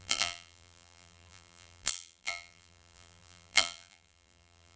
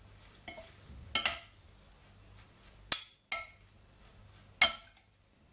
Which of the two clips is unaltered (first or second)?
second